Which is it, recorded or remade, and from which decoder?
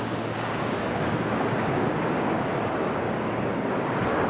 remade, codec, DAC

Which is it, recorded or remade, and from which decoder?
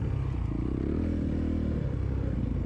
recorded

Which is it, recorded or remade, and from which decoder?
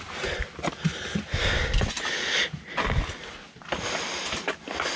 recorded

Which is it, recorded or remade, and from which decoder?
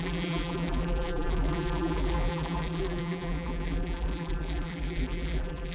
remade, vocoder, BigVGAN v2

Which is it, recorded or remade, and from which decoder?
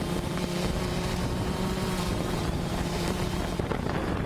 remade, vocoder, BigVGAN v2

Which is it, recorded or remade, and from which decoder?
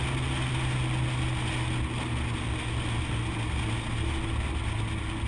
recorded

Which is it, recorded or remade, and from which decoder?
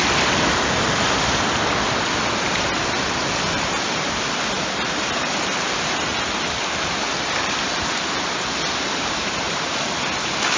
recorded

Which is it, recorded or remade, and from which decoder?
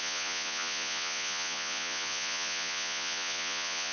remade, vocoder, Vocos